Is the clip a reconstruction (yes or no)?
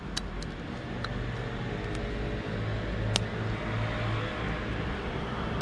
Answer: no